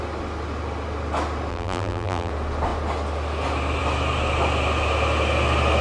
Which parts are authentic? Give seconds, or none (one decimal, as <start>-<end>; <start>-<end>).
0.0-1.5; 2.3-5.8